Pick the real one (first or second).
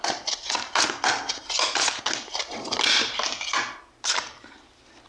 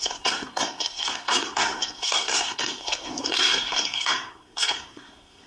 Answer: first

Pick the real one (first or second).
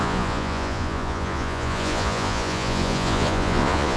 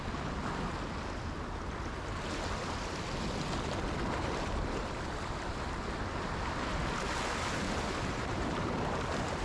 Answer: second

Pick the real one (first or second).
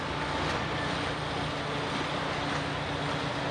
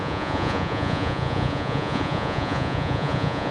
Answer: first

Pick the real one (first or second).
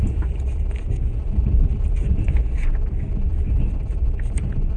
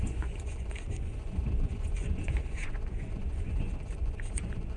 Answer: first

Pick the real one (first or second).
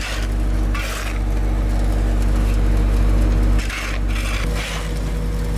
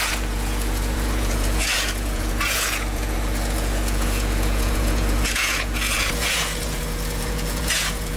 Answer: first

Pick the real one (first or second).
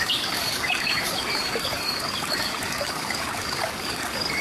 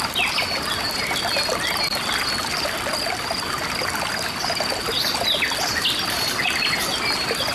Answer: second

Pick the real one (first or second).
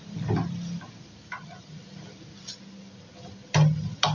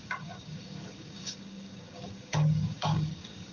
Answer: first